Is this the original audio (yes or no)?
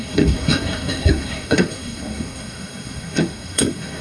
no